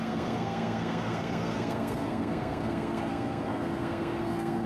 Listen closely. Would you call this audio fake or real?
fake